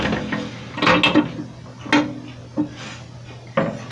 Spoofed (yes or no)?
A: no